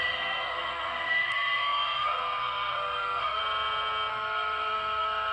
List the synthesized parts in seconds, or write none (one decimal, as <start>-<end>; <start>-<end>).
0.0-3.4; 4.1-5.3